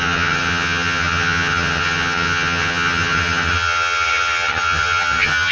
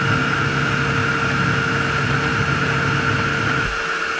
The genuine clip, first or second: second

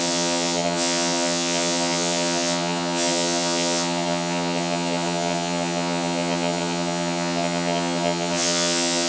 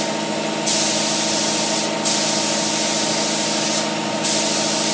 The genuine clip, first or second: second